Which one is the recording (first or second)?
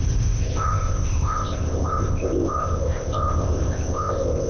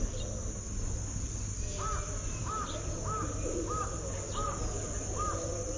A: second